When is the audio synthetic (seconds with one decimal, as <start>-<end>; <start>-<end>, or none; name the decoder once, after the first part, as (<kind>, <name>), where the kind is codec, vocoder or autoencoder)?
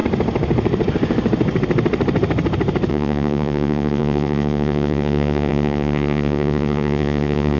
2.9-7.6 (vocoder, Vocos)